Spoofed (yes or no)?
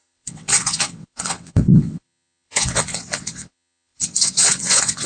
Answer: yes